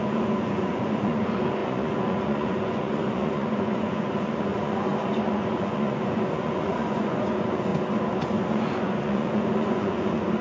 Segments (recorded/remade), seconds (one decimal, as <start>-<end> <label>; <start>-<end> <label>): 0.0-7.7 remade; 7.7-8.5 recorded; 8.5-10.4 remade